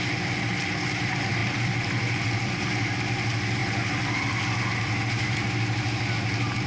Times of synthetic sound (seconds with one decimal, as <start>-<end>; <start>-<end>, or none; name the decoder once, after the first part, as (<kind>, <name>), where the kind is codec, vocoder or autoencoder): none